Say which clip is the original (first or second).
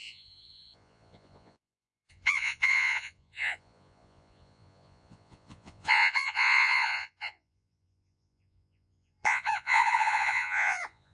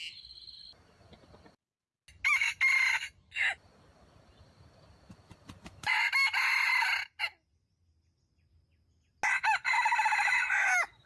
second